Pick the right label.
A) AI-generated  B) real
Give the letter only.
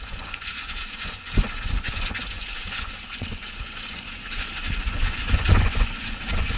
A